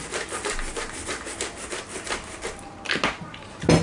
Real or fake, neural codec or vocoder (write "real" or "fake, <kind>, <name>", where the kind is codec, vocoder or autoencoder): real